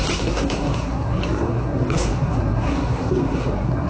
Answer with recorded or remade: remade